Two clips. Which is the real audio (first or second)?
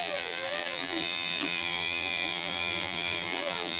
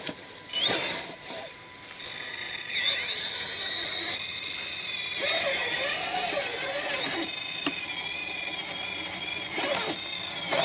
second